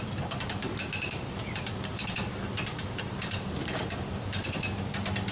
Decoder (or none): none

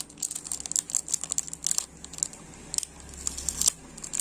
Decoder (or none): none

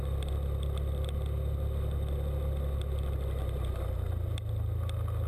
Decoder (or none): none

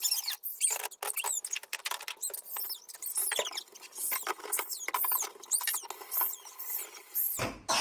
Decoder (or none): none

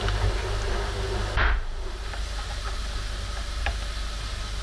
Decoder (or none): none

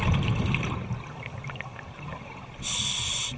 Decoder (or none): none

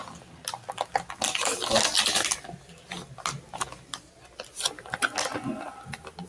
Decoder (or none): none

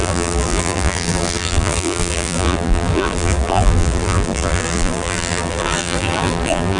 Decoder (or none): vocoder, BigVGAN v2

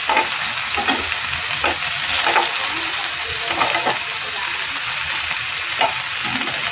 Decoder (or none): none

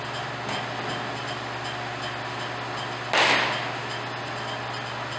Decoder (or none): none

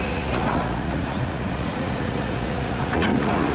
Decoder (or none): vocoder, Vocos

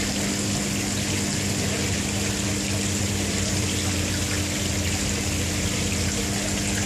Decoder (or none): none